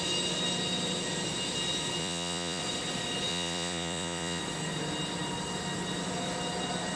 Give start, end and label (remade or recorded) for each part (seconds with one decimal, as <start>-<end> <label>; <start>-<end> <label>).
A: 0.0-2.0 recorded; 2.0-2.6 remade; 2.6-3.3 recorded; 3.3-4.4 remade; 4.4-7.0 recorded